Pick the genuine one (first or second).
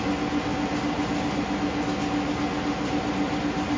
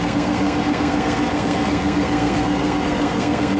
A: first